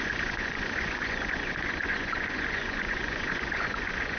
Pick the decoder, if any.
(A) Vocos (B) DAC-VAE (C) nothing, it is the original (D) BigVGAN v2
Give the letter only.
A